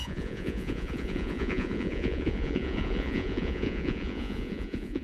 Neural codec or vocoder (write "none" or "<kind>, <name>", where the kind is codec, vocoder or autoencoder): vocoder, Vocos